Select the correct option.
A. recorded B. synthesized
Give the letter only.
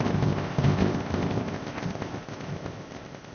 B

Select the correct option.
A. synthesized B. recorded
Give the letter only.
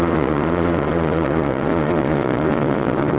A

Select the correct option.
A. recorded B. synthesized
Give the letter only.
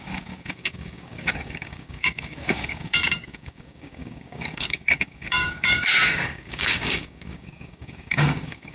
B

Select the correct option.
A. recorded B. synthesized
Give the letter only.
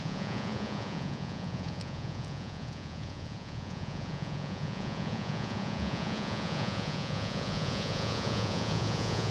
B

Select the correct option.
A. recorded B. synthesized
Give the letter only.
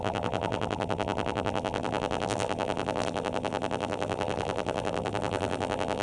B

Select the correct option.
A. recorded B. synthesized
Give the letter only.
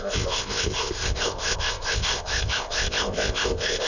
B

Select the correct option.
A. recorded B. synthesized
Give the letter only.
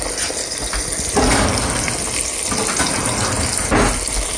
A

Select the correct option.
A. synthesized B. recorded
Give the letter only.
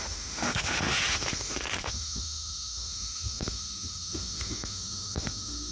A